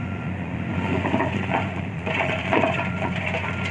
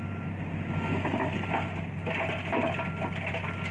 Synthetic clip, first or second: first